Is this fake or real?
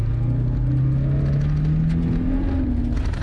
real